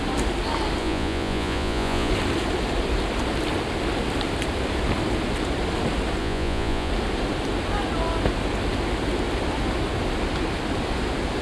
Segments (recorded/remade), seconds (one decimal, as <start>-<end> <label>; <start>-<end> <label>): 0.0-0.8 recorded; 0.8-2.1 remade; 2.1-6.2 recorded; 6.2-6.9 remade; 6.9-11.4 recorded